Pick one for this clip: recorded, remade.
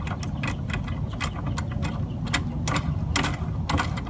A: recorded